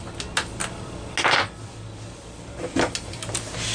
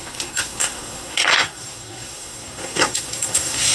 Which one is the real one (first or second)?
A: first